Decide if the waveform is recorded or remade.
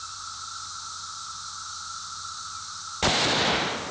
recorded